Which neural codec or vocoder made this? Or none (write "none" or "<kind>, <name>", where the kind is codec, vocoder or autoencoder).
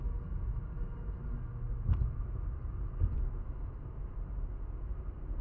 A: none